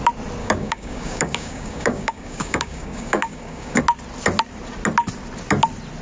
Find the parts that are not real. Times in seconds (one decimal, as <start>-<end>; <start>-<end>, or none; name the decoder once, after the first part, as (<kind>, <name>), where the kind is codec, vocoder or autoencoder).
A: 0.4-3.8 (codec, DAC)